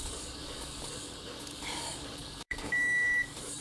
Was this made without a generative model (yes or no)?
no